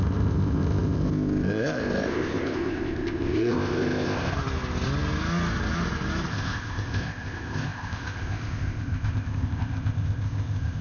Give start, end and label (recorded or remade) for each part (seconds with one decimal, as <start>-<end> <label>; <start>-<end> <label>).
0.0-4.3 remade; 4.3-6.3 recorded; 6.3-10.8 remade